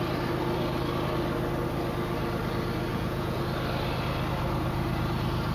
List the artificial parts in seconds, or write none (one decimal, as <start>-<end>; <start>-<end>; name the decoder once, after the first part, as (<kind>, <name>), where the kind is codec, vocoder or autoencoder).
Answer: 2.9-3.4 (vocoder, Vocos)